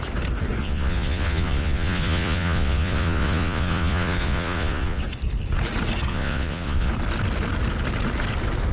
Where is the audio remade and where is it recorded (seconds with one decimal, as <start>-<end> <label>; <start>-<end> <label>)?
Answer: 0.0-0.6 recorded; 0.6-5.0 remade; 5.0-6.1 recorded; 6.1-6.9 remade; 6.9-8.7 recorded